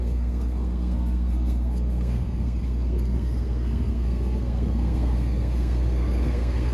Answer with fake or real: fake